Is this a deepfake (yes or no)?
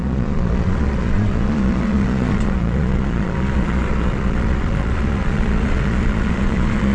yes